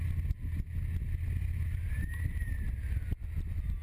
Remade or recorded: recorded